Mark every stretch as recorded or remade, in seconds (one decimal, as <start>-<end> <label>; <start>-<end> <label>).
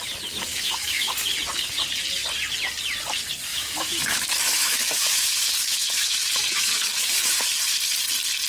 0.0-0.5 recorded; 0.5-1.1 remade; 1.1-3.5 recorded; 3.5-7.4 remade; 7.4-8.5 recorded